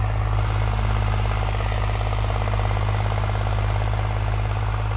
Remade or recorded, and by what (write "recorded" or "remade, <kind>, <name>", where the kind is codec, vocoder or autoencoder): remade, vocoder, BigVGAN v2